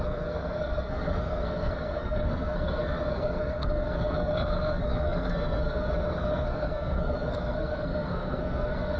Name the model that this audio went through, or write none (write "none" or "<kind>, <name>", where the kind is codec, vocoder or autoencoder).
codec, SNAC